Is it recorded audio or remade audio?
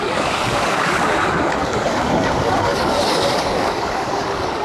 remade